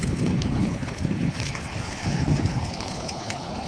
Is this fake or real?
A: fake